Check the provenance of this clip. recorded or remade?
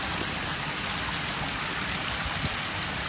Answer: recorded